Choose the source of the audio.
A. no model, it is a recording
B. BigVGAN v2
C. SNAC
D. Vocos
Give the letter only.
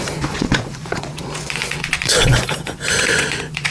D